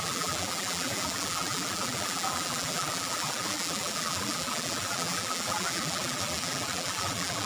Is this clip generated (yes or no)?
yes